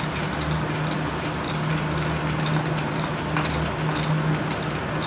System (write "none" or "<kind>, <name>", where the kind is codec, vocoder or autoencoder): none